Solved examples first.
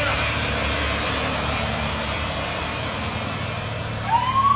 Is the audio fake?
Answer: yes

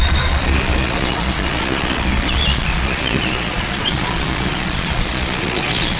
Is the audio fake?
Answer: yes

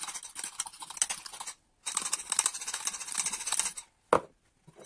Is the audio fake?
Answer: no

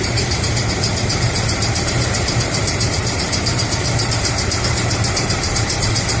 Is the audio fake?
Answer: yes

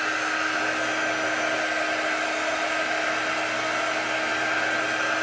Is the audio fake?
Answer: no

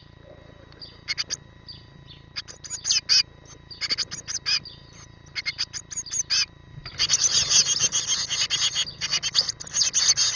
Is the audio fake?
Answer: no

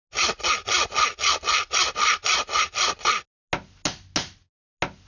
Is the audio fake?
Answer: no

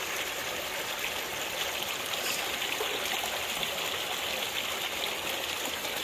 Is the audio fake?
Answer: no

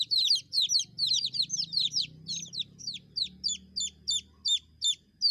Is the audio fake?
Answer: no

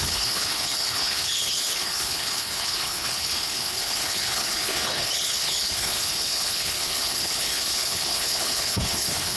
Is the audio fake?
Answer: yes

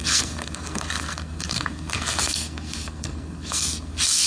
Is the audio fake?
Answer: yes